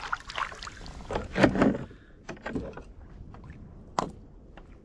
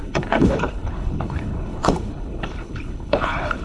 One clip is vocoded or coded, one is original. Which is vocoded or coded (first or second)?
second